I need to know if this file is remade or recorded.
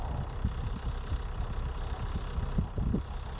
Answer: recorded